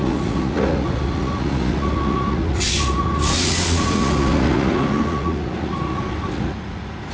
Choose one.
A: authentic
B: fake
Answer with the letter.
B